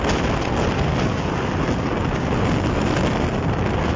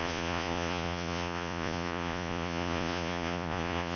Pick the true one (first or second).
first